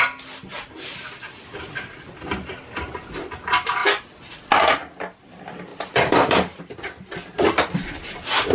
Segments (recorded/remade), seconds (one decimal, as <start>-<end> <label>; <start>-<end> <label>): 0.0-5.7 recorded; 5.7-6.6 remade; 6.6-8.5 recorded